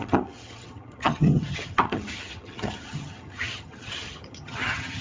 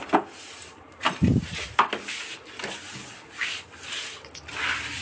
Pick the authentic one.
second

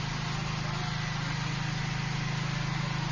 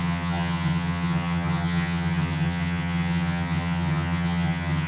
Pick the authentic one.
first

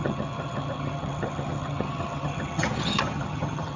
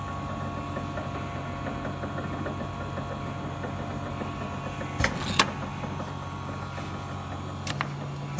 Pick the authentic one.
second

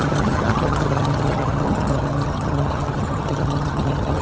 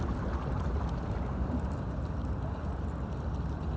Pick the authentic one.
second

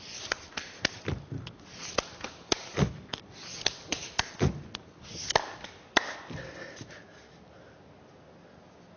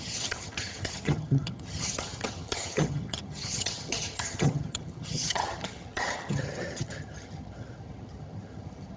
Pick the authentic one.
first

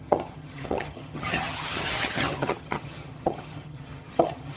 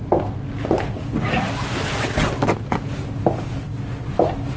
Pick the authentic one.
second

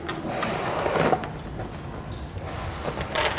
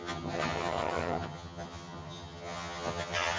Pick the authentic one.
first